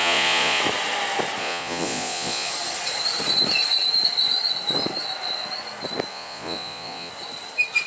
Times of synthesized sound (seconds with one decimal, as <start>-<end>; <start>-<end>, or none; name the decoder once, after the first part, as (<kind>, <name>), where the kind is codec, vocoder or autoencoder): 0.0-0.6 (vocoder, Vocos); 1.4-2.5; 6.1-7.1